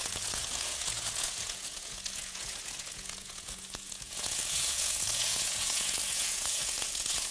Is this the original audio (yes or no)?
no